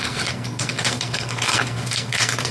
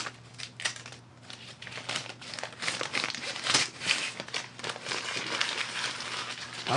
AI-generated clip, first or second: first